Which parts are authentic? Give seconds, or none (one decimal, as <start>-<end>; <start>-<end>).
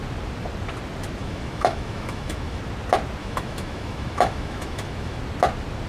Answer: 0.0-1.2; 2.6-3.2; 5.2-5.9